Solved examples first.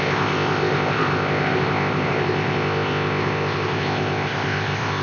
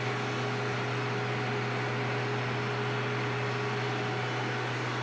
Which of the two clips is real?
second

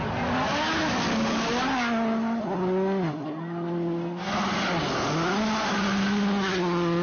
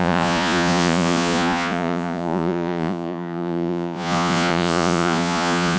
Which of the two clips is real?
first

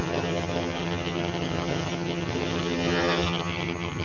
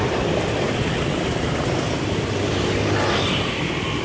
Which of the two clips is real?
second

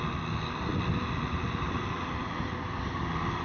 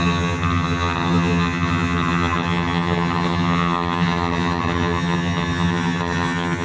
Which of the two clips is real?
first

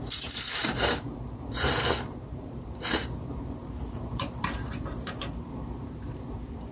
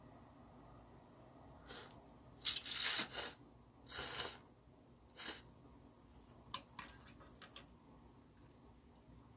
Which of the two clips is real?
second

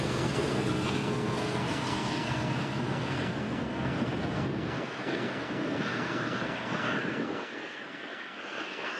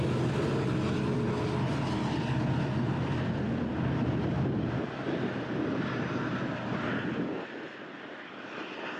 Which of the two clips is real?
second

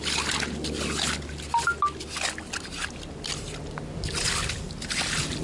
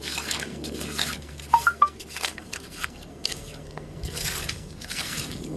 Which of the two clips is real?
first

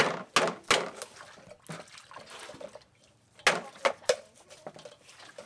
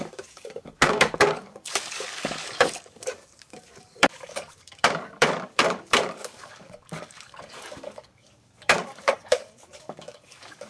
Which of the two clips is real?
first